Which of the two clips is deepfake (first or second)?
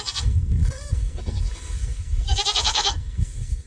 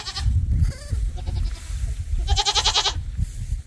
first